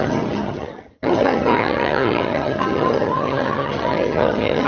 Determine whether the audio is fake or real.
fake